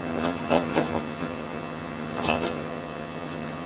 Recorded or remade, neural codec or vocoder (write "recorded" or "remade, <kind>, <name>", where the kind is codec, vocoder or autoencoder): remade, vocoder, HiFi-GAN